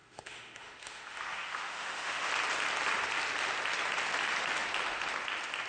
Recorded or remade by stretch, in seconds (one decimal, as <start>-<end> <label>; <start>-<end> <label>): 0.0-2.3 remade; 2.3-5.7 recorded